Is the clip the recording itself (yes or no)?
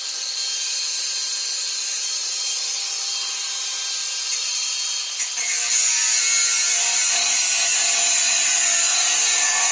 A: yes